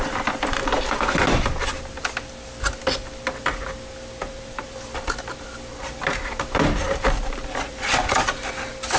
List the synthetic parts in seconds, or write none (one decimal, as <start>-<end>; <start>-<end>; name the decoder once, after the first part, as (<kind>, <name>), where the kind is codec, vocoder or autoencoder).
0.0-1.5 (vocoder, BigVGAN v2); 4.2-8.5